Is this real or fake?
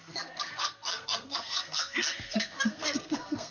fake